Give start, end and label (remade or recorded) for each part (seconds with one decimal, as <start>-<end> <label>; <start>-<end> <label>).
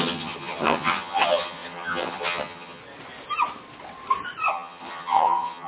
0.0-2.8 remade; 2.8-4.5 recorded; 4.5-5.7 remade